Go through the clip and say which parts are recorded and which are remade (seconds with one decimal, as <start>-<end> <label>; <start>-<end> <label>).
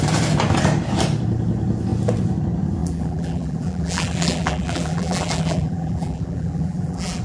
0.0-2.8 recorded; 2.8-7.2 remade